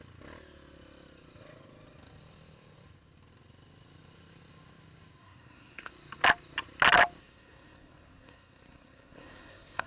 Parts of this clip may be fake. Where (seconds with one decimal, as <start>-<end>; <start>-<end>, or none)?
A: 5.2-5.9; 7.2-9.9